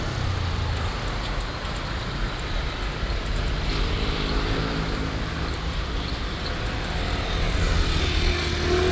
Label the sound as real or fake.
real